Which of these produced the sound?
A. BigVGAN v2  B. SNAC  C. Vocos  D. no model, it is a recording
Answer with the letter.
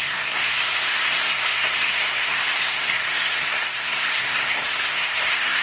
B